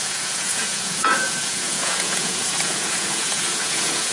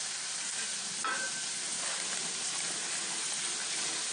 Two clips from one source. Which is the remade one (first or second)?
first